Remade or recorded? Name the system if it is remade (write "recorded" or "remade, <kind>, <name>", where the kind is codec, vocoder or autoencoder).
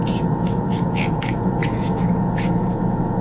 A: remade, vocoder, Vocos